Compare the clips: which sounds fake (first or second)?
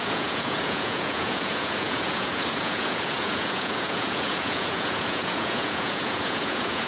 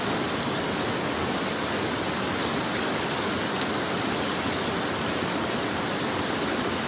first